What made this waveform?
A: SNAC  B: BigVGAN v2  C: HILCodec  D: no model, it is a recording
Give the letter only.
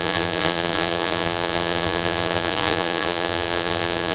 B